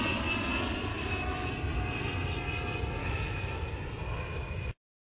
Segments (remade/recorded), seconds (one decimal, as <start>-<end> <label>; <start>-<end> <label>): 0.0-0.9 recorded; 0.9-1.5 remade; 1.5-3.0 recorded; 3.0-3.7 remade; 3.7-4.3 recorded; 4.3-5.1 remade